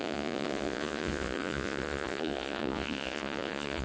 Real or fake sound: fake